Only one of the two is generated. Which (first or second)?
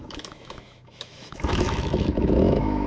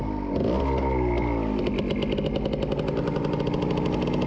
first